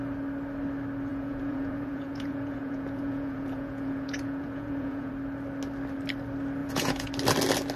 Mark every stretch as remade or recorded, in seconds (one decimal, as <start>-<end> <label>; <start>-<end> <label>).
0.0-1.1 recorded; 1.1-5.1 remade; 5.1-6.6 recorded; 6.6-7.1 remade; 7.1-7.8 recorded